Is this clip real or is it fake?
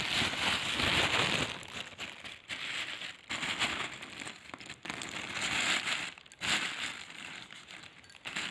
real